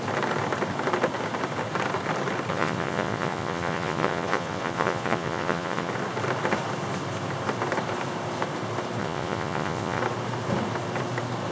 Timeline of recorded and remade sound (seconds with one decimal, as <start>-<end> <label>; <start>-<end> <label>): 0.0-2.5 recorded; 2.5-5.9 remade; 5.9-9.0 recorded; 9.0-10.0 remade; 10.0-11.5 recorded